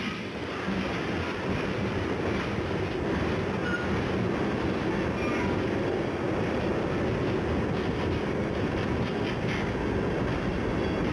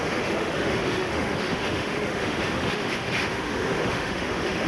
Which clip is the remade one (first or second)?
second